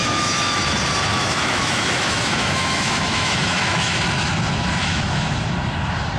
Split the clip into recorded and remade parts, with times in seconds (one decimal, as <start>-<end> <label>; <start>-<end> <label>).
0.0-0.6 remade; 0.6-1.1 recorded; 1.1-4.0 remade; 4.0-4.8 recorded; 4.8-5.3 remade; 5.3-6.2 recorded